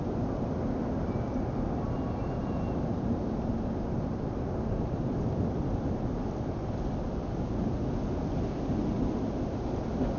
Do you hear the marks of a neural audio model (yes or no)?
no